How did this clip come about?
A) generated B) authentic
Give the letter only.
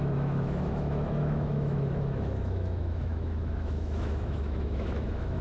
A